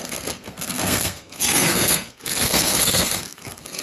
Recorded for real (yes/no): no